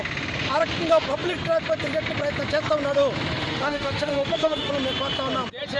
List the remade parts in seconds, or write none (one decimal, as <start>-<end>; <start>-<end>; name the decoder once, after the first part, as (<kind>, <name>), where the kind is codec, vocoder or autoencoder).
3.5-4.7 (autoencoder, DAC-VAE)